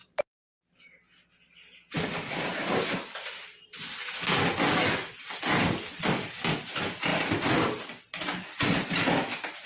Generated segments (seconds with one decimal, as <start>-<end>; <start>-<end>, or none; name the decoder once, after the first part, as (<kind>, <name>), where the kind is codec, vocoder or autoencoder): none

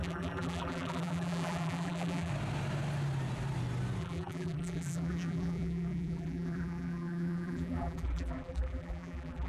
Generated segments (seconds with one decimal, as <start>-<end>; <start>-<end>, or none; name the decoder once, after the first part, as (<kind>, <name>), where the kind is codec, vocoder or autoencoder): 0.0-2.3 (vocoder, BigVGAN v2); 4.0-9.5

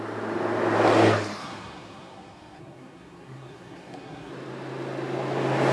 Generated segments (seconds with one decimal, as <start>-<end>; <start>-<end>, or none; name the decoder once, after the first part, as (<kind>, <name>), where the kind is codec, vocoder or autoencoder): 1.4-4.3 (codec, SNAC)

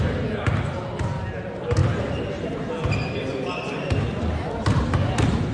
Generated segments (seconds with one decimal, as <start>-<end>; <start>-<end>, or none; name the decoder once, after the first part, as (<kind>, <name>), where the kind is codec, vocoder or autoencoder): none

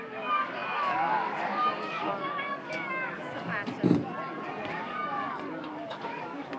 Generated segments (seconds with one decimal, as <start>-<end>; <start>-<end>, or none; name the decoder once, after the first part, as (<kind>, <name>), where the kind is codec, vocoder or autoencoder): 0.0-3.5 (codec, DAC); 4.7-6.6

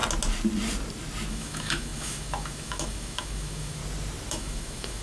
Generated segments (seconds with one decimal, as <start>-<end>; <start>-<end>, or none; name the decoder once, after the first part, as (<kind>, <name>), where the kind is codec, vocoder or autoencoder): 1.3-3.8 (autoencoder, DAC-VAE); 4.3-5.0

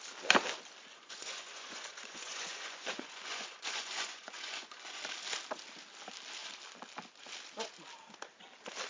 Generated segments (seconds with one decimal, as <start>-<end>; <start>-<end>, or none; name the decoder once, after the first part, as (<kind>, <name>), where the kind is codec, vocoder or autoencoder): 0.9-5.0 (vocoder, Vocos)

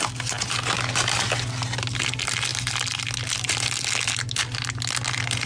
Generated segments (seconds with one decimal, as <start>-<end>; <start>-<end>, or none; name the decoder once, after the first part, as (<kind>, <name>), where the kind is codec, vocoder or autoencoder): none